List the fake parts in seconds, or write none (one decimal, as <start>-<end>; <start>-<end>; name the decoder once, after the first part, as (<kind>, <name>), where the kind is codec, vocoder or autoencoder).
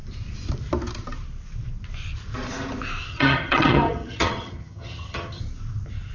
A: 3.1-5.4 (vocoder, HiFi-GAN)